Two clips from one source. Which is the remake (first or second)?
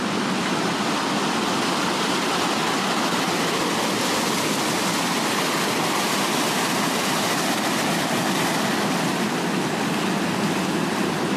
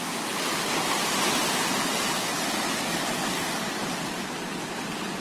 second